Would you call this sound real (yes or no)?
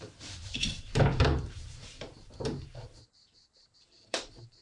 no